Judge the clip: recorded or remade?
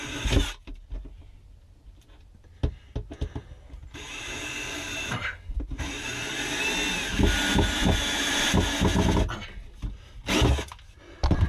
recorded